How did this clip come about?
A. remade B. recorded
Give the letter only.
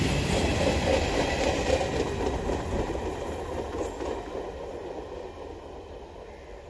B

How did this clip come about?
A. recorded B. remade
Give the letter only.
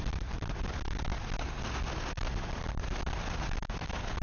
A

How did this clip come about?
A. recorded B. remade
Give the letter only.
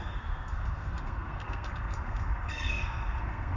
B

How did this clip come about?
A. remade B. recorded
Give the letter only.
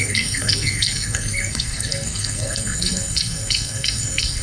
A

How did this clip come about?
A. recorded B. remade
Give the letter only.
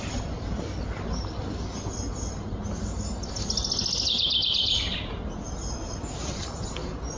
A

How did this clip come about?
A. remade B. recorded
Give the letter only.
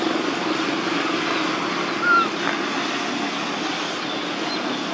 B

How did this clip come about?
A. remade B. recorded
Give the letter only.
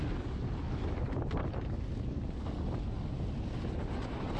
B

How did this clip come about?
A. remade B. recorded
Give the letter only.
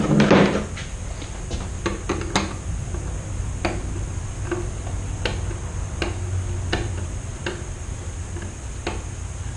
B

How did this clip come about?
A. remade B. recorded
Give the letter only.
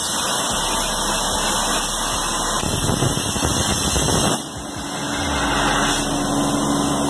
B